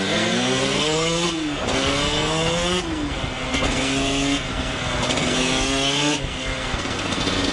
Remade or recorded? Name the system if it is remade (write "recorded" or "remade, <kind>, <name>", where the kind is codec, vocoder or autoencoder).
remade, codec, SNAC